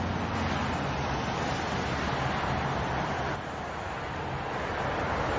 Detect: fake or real real